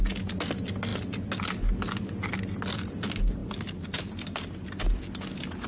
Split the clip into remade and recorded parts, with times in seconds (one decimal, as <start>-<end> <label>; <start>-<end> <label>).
0.0-5.7 recorded